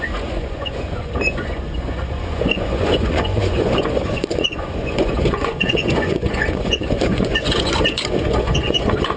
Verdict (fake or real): fake